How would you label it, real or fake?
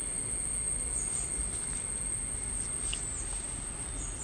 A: real